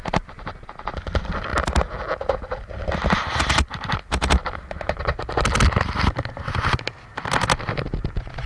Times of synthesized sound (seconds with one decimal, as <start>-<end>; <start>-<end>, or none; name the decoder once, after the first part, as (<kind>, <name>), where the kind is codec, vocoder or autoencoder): none